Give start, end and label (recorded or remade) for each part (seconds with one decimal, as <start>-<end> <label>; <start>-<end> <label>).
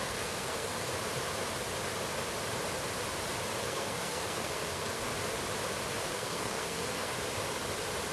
0.0-0.9 remade; 0.9-3.6 recorded; 3.6-5.1 remade; 5.1-6.0 recorded; 6.0-7.1 remade; 7.1-8.1 recorded